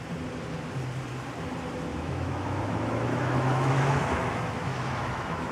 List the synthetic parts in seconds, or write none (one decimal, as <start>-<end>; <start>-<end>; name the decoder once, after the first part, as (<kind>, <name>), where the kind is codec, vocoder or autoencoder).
1.9-5.5 (autoencoder, DAC-VAE)

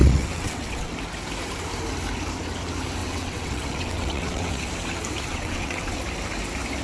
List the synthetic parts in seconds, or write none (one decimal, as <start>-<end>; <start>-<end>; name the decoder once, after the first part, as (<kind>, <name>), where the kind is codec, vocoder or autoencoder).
0.0-0.9 (vocoder, WaveNeXt); 3.0-4.7; 5.3-6.0

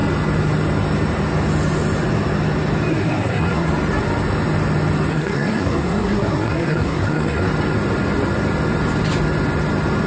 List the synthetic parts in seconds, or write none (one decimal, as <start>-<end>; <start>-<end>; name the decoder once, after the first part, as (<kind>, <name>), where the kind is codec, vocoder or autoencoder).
2.9-3.7 (codec, SNAC); 5.1-7.5

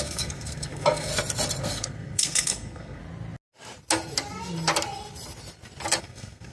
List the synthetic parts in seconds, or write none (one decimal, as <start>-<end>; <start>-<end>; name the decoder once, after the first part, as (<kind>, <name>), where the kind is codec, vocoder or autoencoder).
0.0-1.1 (codec, SNAC); 1.6-3.0; 6.0-6.5